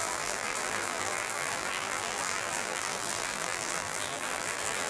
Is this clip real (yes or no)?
no